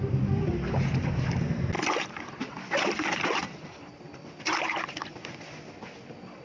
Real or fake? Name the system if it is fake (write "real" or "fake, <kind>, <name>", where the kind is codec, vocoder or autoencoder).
real